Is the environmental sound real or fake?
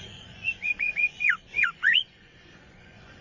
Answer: fake